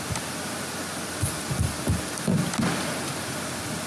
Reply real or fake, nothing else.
real